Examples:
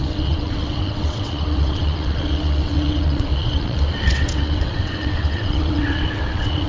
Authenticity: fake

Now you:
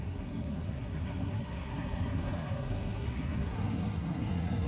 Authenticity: fake